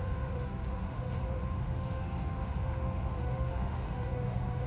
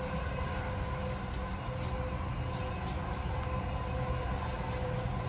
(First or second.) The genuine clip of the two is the second